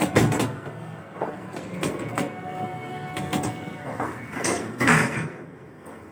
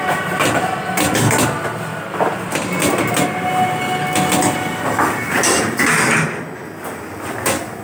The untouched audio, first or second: second